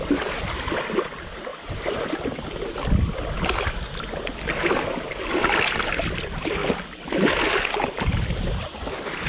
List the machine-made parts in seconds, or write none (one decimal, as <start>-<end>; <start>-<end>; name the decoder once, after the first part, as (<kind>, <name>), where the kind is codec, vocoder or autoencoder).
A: none